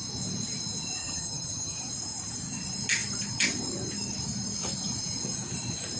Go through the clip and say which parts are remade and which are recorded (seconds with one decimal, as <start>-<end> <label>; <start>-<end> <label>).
0.0-1.0 recorded; 1.0-1.9 remade; 1.9-6.0 recorded